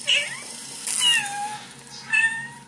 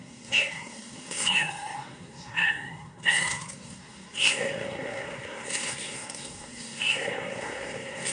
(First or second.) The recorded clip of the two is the first